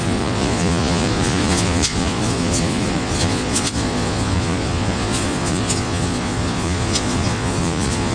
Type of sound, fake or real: fake